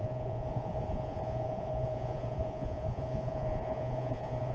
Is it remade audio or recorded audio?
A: remade